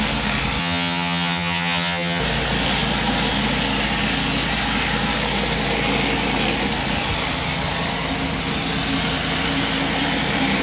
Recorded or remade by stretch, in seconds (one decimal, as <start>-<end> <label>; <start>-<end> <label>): 0.0-0.6 recorded; 0.6-2.2 remade; 2.2-10.6 recorded